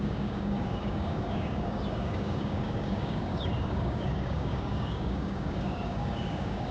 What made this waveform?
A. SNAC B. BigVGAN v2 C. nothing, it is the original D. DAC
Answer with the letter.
D